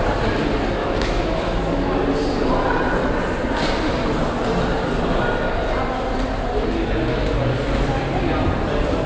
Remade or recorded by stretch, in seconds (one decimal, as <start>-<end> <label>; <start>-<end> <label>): 0.0-0.8 recorded; 0.8-1.9 remade; 1.9-9.1 recorded